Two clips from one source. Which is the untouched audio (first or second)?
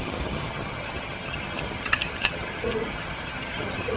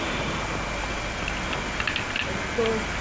second